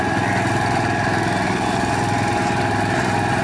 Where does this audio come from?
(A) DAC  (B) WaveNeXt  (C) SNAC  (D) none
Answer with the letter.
D